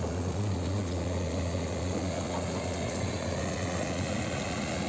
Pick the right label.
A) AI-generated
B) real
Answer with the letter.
A